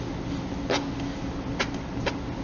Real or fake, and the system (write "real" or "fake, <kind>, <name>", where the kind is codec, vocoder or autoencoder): real